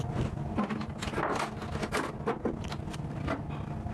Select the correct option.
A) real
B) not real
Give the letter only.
A